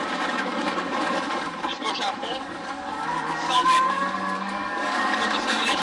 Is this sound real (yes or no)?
no